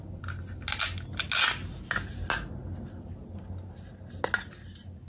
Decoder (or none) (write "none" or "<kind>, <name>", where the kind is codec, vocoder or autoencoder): none